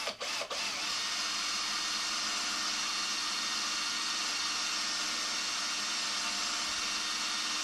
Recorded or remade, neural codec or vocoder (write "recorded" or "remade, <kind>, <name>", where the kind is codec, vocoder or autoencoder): recorded